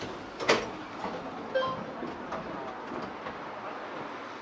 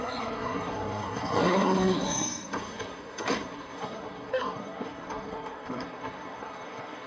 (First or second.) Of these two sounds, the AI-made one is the second